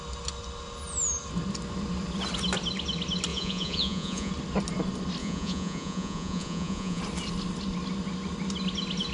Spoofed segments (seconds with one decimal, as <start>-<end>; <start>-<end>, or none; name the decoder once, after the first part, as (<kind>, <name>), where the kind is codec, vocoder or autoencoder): 3.3-4.3 (vocoder, Vocos); 5.2-7.0